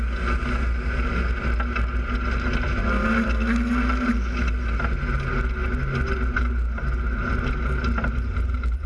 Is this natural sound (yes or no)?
yes